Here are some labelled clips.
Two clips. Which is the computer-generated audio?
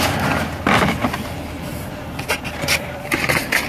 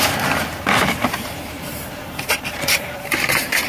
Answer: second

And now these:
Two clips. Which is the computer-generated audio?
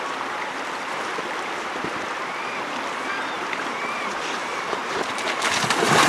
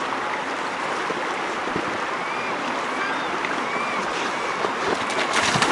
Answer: first